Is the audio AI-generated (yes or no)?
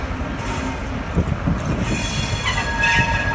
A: no